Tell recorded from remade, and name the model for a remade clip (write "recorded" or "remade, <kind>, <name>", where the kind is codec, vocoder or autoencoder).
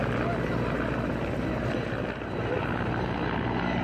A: recorded